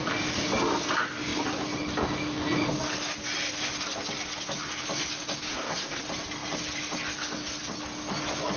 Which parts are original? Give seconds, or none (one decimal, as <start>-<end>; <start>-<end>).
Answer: 0.0-5.5; 6.0-8.6